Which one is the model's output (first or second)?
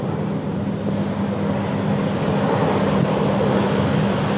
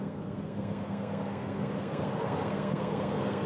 second